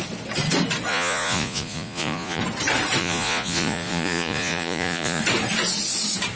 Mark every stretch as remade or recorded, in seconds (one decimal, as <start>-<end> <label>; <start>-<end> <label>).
0.0-0.9 recorded; 0.9-2.4 remade; 2.4-3.0 recorded; 3.0-5.2 remade; 5.2-6.4 recorded